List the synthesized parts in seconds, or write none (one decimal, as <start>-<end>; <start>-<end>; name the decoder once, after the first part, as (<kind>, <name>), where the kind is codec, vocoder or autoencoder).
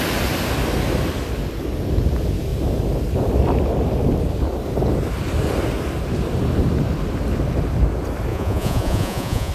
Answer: 8.3-9.5 (vocoder, Vocos)